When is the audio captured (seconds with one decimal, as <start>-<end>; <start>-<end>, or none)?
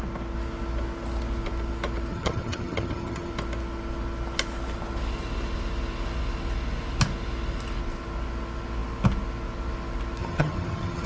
0.0-2.1; 3.3-10.2